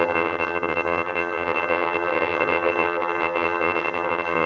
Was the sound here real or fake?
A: fake